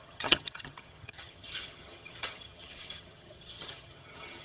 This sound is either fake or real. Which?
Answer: fake